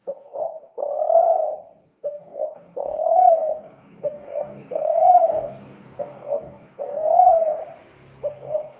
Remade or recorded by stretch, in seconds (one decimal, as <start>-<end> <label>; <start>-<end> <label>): 0.0-0.9 remade; 0.9-1.8 recorded; 1.8-7.6 remade; 7.6-8.3 recorded; 8.3-8.8 remade